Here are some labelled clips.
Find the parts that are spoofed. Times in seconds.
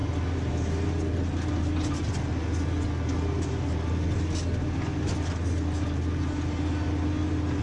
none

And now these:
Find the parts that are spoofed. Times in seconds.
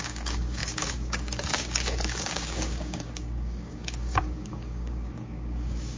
0.0-6.0 (codec, DAC)